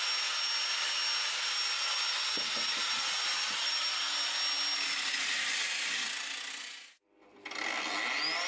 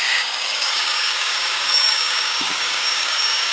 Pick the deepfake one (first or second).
second